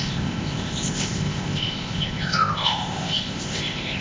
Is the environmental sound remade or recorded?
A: remade